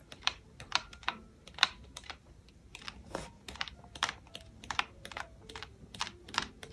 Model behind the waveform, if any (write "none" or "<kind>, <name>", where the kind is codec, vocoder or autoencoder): vocoder, BigVGAN v2